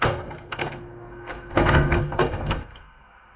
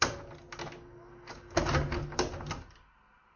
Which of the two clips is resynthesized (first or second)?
first